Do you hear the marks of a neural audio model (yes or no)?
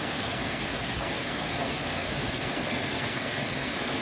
yes